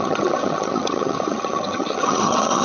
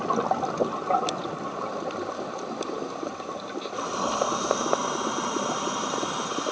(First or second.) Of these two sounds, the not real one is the first